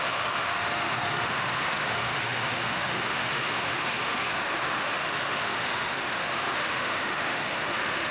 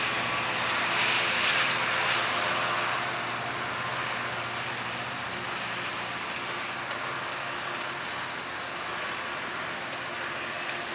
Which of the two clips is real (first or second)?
second